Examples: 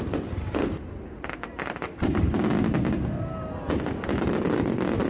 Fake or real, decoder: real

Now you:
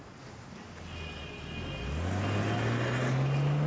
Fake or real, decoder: real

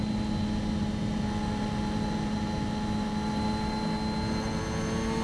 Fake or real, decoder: real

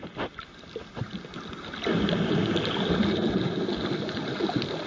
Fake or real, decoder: real